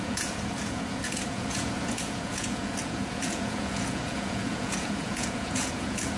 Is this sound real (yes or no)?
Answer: no